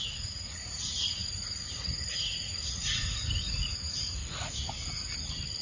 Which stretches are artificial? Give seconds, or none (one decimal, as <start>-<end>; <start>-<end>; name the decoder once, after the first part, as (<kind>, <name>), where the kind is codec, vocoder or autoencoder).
0.0-4.2 (vocoder, Vocos)